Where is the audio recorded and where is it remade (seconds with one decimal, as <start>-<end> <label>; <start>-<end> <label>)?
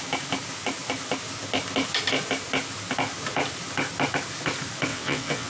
0.0-4.9 recorded; 4.9-5.5 remade